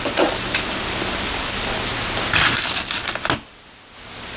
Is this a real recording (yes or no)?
yes